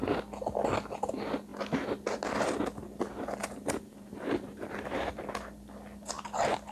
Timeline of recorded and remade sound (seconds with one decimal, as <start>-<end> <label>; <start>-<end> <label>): 0.0-3.4 recorded; 3.4-5.2 remade; 5.2-6.7 recorded